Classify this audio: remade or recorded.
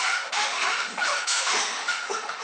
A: remade